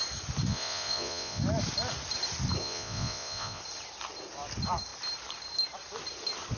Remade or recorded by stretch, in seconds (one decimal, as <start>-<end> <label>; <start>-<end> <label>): 0.0-0.5 recorded; 0.5-1.4 remade; 1.4-2.6 recorded; 2.6-3.6 remade; 3.6-6.6 recorded

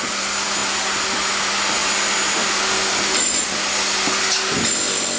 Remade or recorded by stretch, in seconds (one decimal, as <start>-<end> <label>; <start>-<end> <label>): 0.0-5.2 recorded